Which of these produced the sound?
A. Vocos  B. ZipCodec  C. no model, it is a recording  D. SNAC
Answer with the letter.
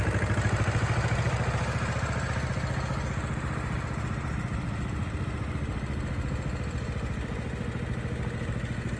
C